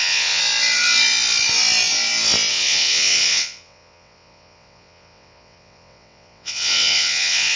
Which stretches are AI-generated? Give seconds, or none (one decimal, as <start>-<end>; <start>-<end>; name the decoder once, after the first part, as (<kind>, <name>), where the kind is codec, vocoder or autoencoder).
0.0-0.4 (vocoder, WaveNeXt); 2.5-7.6